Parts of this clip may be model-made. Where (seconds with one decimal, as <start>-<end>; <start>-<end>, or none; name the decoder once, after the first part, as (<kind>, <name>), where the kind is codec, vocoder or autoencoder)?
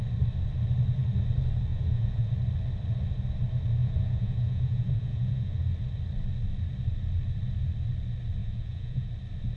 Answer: 1.7-2.3 (vocoder, Vocos); 3.8-5.6; 8.4-9.1